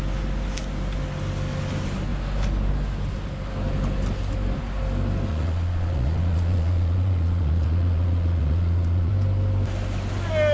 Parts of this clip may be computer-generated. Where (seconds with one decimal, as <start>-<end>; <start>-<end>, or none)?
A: 5.3-9.1